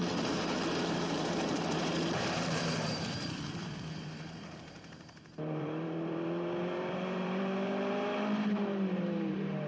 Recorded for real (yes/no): no